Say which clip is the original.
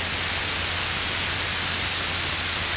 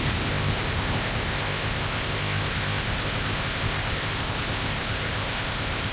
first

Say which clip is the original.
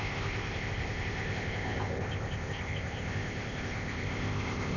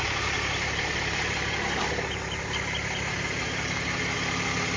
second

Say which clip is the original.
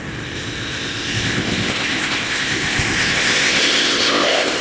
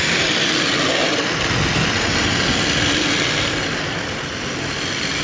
second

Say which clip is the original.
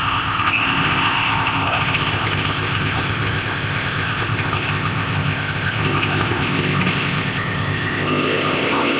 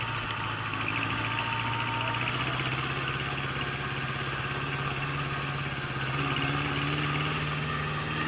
second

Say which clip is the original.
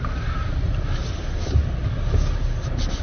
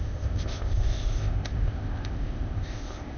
first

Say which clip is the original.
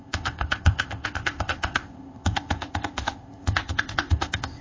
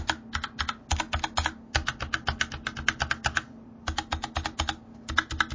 second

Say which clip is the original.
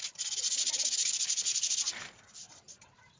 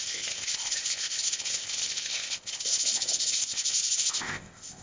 first